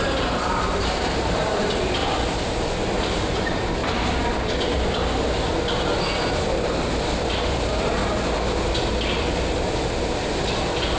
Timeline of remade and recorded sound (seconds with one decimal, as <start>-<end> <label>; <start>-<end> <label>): 0.0-2.0 remade; 2.0-3.0 recorded; 3.0-3.8 remade; 3.8-7.5 recorded; 7.5-8.0 remade; 8.0-11.0 recorded